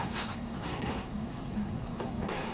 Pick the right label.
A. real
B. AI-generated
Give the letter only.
B